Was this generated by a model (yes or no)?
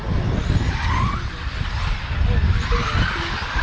no